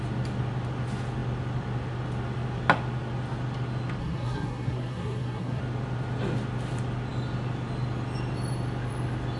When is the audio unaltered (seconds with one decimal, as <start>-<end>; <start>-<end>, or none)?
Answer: 0.0-4.0; 5.6-9.4